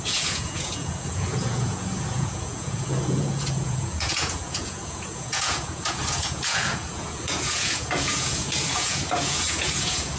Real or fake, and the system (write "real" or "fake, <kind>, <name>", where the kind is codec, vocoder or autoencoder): fake, vocoder, Vocos